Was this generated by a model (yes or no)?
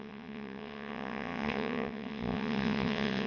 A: yes